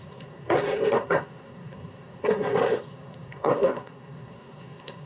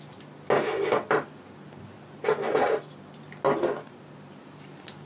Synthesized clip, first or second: first